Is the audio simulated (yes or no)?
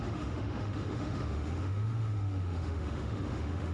yes